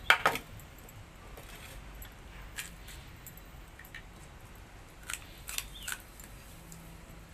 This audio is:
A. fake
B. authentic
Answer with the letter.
B